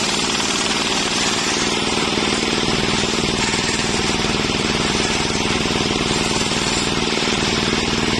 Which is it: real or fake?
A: fake